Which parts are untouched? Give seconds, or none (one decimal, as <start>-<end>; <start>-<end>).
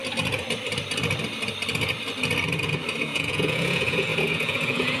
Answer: 0.0-3.0